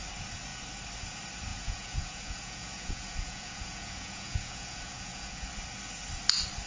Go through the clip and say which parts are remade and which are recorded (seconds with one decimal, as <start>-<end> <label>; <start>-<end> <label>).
0.0-1.5 recorded; 1.5-5.5 remade; 5.5-6.7 recorded